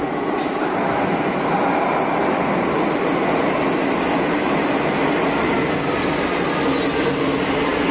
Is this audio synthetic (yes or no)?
no